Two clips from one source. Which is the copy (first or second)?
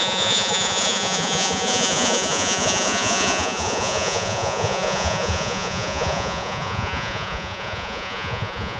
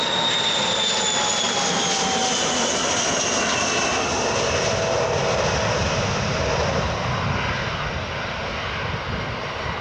first